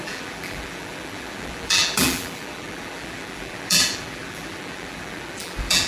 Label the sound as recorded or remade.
remade